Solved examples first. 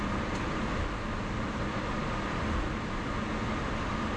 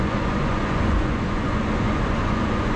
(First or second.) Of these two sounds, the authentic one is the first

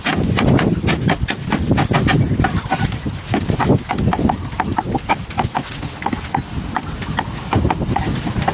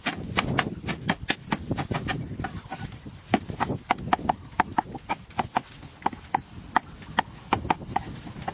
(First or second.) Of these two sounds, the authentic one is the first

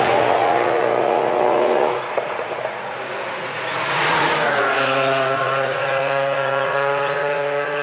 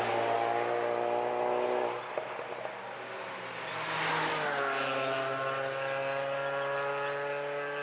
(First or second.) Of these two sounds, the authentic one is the second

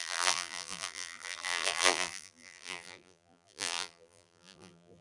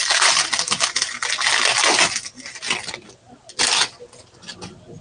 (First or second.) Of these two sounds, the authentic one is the second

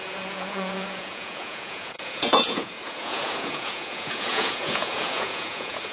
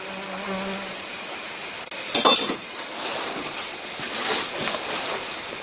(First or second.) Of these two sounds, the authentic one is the second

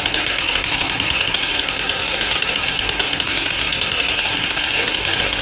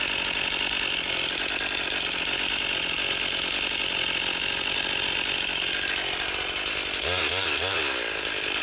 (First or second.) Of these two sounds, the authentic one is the second